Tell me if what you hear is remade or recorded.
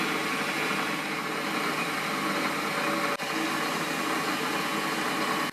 recorded